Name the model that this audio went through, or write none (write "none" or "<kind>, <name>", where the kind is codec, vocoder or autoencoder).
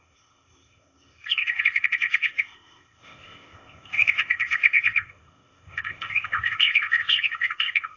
codec, ZipCodec